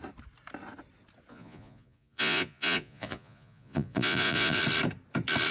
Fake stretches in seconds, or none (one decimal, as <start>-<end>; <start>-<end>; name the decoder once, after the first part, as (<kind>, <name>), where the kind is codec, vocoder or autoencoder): 1.3-4.6 (vocoder, Vocos)